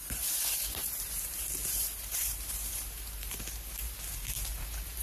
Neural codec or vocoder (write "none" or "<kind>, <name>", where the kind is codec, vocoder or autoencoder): vocoder, BigVGAN v2